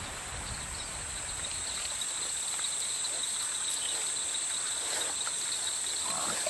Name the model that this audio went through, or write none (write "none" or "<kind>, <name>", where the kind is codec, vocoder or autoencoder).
none